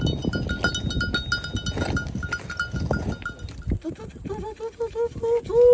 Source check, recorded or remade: recorded